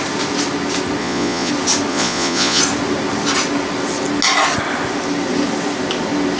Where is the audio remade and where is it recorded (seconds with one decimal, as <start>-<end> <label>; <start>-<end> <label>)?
0.0-1.0 recorded; 1.0-1.5 remade; 1.5-1.9 recorded; 1.9-2.6 remade; 2.6-6.4 recorded